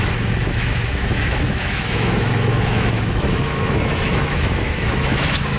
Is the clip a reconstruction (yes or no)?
yes